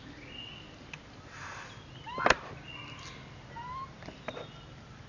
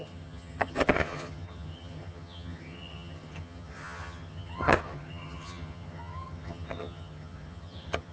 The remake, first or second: second